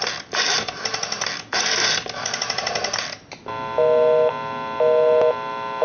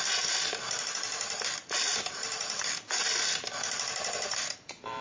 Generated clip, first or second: second